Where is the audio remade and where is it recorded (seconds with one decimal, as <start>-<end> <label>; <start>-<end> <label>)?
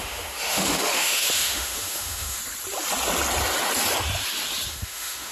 0.0-2.4 remade; 2.4-4.7 recorded; 4.7-5.3 remade